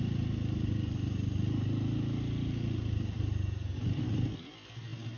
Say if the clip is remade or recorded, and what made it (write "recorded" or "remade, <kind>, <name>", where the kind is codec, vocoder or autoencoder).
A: recorded